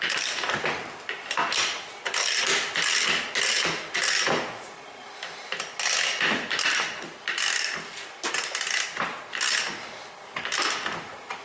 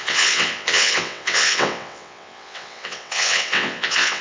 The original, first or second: first